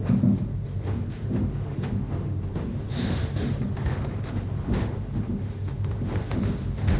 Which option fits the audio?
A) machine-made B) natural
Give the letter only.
A